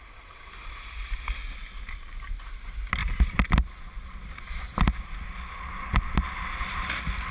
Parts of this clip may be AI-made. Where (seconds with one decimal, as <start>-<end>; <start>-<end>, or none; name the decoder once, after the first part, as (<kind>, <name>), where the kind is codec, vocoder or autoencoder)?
none